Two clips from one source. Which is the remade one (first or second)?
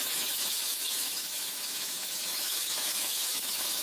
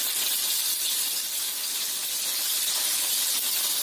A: first